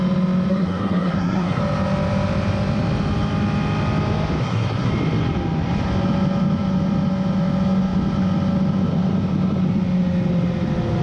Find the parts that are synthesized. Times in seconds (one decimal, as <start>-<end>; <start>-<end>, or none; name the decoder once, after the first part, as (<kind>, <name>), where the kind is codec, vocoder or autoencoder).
0.5-1.6 (codec, SNAC); 4.4-4.9

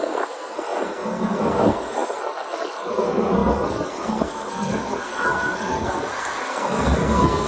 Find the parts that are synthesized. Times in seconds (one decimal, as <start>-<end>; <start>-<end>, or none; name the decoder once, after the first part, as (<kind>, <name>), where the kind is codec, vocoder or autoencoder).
0.0-7.5 (codec, SNAC)

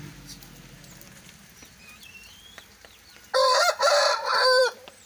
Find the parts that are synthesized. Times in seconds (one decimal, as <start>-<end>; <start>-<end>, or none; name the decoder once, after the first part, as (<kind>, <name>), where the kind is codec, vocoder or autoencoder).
none

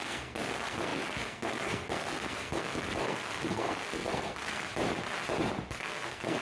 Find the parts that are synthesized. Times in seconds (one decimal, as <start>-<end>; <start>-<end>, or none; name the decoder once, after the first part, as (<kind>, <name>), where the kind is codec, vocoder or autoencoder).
0.0-4.7 (codec, SNAC); 5.7-6.4

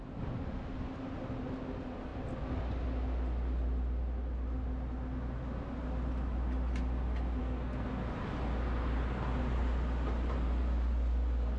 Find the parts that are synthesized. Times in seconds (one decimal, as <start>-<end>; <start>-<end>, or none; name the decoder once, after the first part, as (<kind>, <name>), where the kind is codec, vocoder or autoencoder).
7.4-7.9 (codec, SNAC)

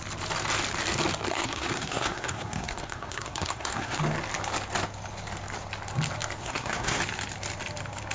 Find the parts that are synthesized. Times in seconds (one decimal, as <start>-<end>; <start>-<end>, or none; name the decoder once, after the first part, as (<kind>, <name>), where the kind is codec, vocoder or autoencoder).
1.3-4.0 (codec, SNAC); 6.4-7.0